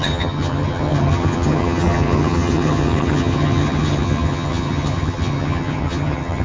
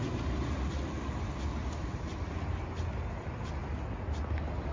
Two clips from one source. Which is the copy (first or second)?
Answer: first